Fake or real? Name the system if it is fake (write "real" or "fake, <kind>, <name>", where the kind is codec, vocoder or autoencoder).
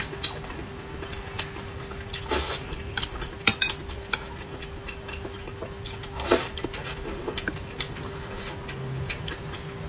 real